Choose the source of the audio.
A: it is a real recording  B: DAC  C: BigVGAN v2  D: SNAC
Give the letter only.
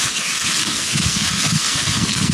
D